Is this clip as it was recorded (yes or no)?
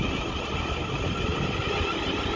yes